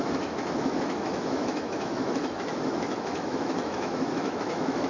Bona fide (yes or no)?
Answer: no